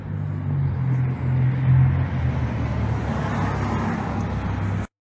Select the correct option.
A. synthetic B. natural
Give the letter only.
B